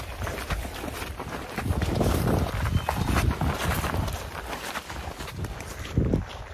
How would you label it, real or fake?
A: real